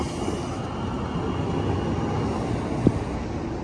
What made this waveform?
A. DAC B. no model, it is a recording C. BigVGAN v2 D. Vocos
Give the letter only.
B